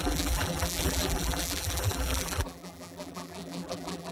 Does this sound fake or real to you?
fake